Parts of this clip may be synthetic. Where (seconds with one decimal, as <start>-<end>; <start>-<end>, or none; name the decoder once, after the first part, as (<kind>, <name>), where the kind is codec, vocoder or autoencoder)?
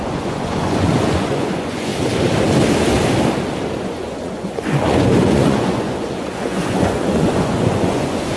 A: 0.0-1.9 (vocoder, Vocos); 3.8-8.4